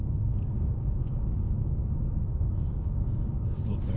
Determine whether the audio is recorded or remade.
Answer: remade